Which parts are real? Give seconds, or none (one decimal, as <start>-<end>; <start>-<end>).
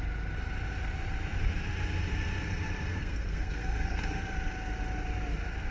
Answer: 0.0-2.9; 4.0-5.7